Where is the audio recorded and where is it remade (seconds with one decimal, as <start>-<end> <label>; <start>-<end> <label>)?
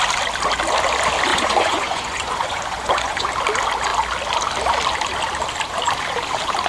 0.0-1.3 recorded; 1.3-3.3 remade; 3.3-6.7 recorded